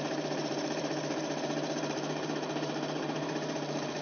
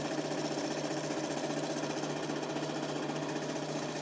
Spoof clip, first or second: first